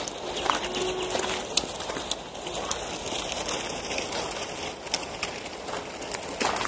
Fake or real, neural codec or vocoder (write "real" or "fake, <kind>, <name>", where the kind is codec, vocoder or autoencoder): real